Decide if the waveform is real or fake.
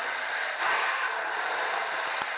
real